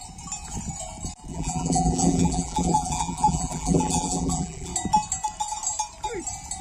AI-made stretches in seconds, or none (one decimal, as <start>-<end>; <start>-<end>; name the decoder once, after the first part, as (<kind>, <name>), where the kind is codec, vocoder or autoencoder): 1.3-4.7 (vocoder, BigVGAN v2)